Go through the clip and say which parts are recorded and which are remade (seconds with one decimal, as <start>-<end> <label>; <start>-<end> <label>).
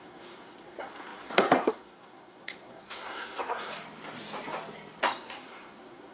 0.0-3.7 remade; 3.7-5.0 recorded; 5.0-6.1 remade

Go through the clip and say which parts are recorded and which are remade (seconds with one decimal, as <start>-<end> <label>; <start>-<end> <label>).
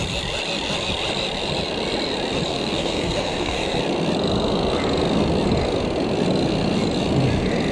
0.0-2.5 recorded; 2.5-3.8 remade; 3.8-7.7 recorded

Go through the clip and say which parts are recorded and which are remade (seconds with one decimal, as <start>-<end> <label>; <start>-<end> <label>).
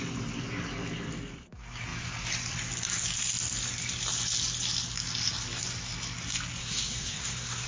0.0-6.6 recorded; 6.6-7.7 remade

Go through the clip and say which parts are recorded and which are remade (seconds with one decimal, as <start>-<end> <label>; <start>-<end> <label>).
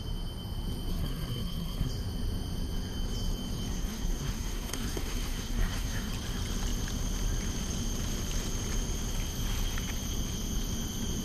0.0-0.9 recorded; 0.9-1.9 remade; 1.9-3.7 recorded; 3.7-6.1 remade; 6.1-11.2 recorded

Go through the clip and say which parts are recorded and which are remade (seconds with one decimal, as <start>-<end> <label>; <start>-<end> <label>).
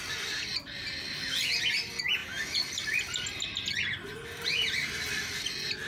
0.0-5.9 recorded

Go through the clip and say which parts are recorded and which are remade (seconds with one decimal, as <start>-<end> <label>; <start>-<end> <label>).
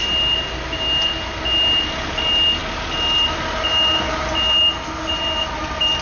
0.0-6.0 recorded